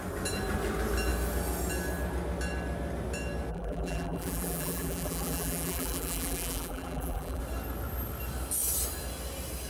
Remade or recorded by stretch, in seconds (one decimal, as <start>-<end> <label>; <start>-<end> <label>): 0.0-3.5 recorded; 3.5-7.4 remade; 7.4-9.7 recorded